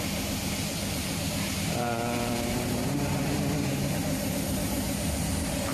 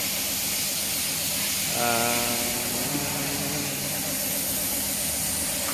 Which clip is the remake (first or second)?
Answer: first